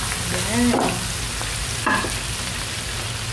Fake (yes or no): no